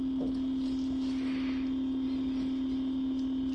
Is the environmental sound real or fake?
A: real